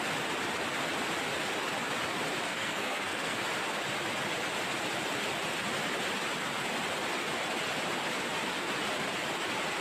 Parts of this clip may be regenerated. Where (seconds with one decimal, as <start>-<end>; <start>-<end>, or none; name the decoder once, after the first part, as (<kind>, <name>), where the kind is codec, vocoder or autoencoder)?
2.4-3.4 (codec, SNAC)